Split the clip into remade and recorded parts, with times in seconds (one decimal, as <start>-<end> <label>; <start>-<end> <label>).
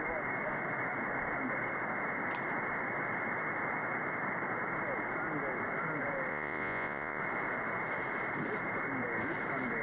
0.0-6.3 recorded; 6.3-7.2 remade; 7.2-9.8 recorded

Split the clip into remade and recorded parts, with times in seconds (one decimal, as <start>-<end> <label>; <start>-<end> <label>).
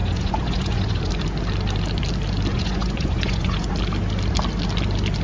0.0-1.1 remade; 1.1-2.5 recorded; 2.5-3.7 remade; 3.7-5.2 recorded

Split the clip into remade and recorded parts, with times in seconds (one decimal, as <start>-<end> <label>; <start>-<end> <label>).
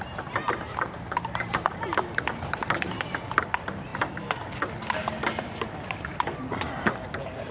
0.0-7.5 recorded